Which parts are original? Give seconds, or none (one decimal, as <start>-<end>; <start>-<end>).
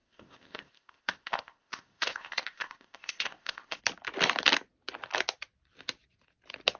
3.8-6.8